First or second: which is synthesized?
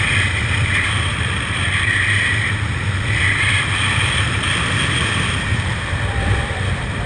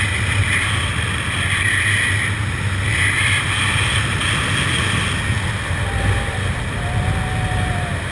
first